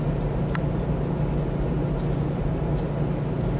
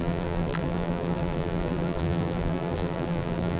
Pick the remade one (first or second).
second